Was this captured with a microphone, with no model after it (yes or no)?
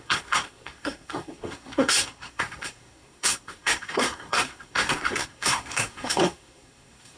no